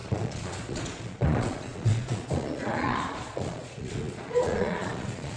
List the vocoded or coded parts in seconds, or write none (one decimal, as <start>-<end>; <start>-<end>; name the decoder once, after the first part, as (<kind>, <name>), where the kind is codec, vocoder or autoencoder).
0.0-5.4 (vocoder, Vocos)